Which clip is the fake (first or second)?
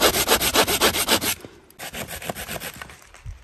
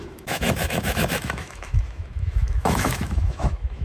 second